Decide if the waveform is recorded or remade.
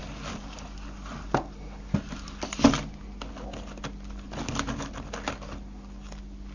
recorded